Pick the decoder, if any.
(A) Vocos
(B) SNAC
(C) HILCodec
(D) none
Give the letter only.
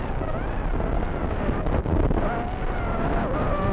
D